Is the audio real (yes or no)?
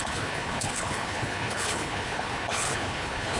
no